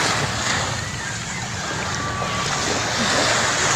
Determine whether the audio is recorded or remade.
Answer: recorded